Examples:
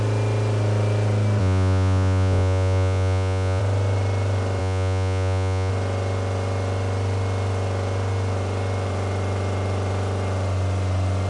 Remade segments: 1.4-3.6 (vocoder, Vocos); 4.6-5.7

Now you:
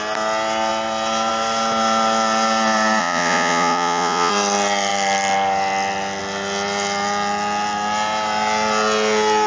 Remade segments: 3.0-4.3 (vocoder, Vocos)

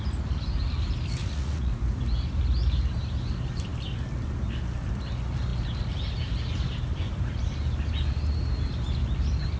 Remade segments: 1.2-1.7 (vocoder, Vocos)